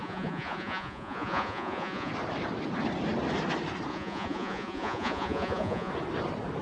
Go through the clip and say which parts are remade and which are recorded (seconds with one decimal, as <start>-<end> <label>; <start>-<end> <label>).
0.0-2.1 remade; 2.1-3.9 recorded; 3.9-5.9 remade; 5.9-6.6 recorded